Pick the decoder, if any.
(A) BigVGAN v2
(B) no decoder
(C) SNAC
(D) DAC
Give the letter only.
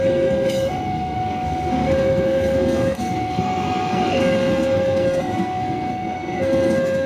C